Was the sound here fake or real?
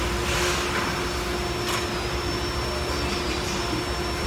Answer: real